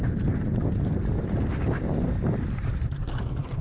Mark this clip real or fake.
fake